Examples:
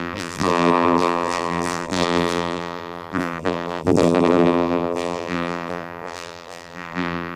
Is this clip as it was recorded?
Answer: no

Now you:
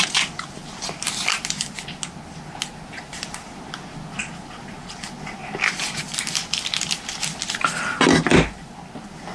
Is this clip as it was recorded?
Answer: yes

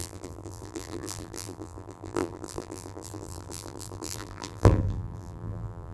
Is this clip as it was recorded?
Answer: no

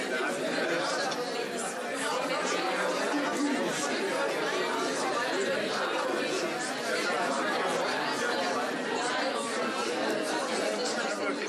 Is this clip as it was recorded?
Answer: yes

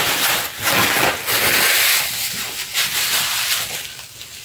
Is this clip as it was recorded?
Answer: yes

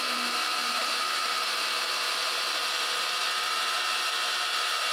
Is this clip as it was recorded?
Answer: no